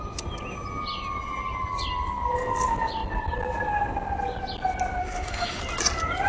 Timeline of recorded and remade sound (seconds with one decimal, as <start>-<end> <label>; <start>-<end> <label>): 0.0-5.0 recorded; 5.0-5.6 remade; 5.6-6.3 recorded